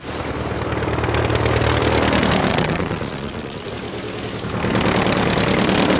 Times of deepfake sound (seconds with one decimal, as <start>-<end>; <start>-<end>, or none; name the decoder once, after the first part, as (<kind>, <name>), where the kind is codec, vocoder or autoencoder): 2.5-3.7 (vocoder, Vocos)